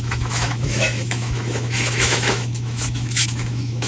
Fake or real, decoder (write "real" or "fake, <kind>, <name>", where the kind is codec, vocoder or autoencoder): fake, autoencoder, DAC-VAE